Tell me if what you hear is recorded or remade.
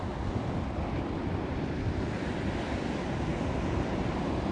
recorded